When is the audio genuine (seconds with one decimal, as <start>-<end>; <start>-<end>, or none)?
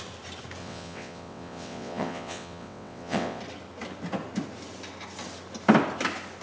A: 0.0-0.6; 3.4-6.4